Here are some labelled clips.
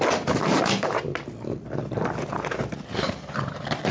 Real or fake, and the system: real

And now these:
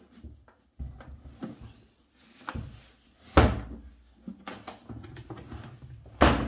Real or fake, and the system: real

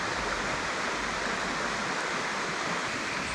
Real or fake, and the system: real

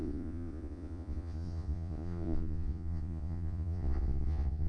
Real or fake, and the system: fake, vocoder, Vocos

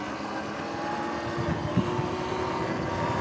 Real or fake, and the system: real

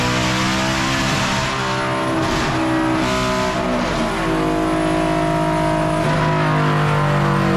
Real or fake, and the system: real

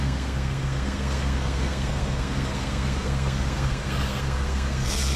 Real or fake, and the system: fake, codec, SNAC